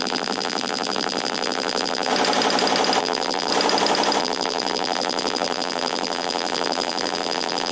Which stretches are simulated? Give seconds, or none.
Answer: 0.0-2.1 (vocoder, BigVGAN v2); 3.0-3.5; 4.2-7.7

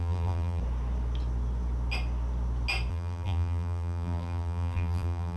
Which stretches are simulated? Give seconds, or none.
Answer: 0.0-0.6 (vocoder, BigVGAN v2); 2.9-5.4